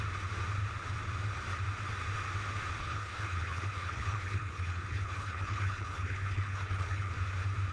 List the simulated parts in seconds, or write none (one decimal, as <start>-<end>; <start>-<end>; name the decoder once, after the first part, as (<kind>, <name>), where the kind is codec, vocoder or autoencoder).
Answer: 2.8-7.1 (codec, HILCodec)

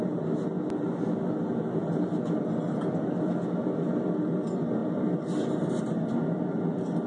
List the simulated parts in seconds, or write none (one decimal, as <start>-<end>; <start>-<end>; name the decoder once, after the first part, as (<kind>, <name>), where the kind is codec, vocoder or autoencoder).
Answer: none

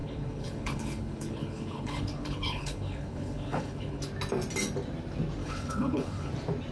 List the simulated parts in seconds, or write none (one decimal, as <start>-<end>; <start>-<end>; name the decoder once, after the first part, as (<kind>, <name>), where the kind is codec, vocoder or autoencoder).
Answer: 0.0-4.0 (codec, HILCodec); 5.4-6.3

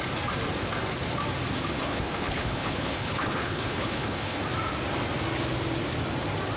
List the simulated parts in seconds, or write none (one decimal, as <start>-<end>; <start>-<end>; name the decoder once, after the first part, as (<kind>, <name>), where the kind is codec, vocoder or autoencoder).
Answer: 1.8-4.4 (codec, HILCodec)